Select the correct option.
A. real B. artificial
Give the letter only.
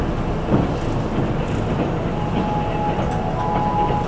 A